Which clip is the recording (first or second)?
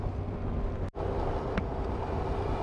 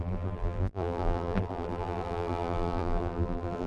first